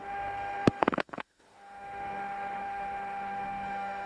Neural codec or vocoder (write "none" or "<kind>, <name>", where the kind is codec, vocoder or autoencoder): autoencoder, DAC-VAE